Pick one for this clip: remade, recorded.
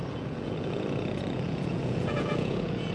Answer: remade